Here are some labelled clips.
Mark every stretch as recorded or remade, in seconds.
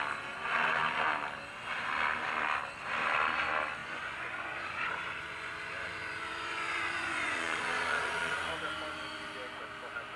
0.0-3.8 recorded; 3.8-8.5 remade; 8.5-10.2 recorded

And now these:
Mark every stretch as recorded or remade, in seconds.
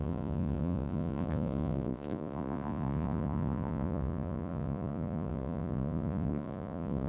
0.0-7.1 remade